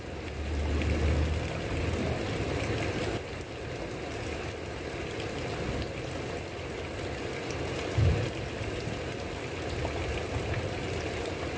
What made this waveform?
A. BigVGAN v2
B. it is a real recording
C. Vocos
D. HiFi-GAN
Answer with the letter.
B